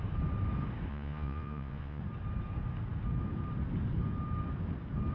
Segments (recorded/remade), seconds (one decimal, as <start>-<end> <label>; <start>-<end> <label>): 0.0-0.9 recorded; 0.9-2.0 remade; 2.0-5.1 recorded